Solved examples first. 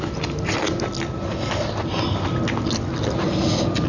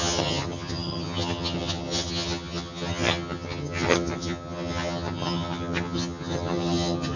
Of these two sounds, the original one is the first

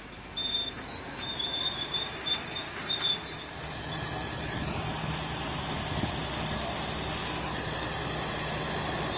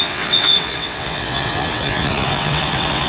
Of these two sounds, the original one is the first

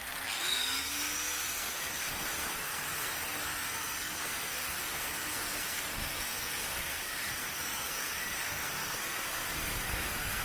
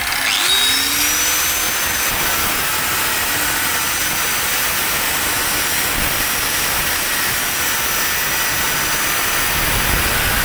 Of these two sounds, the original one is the second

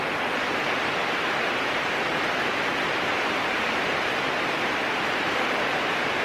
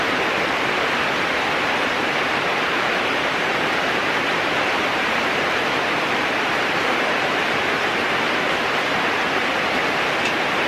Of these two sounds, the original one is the first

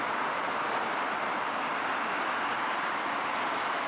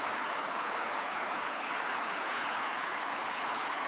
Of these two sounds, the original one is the first